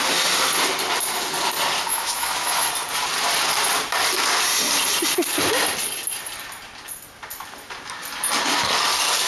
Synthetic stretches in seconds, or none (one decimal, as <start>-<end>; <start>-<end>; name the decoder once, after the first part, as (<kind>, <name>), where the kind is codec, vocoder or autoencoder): 1.9-2.7 (autoencoder, DAC-VAE)